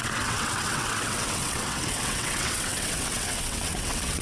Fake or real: fake